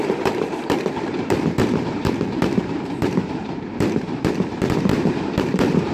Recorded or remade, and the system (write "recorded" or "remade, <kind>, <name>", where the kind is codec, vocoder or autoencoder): remade, vocoder, BigVGAN v2